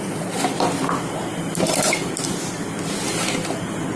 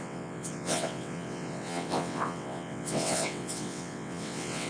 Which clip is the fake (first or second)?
second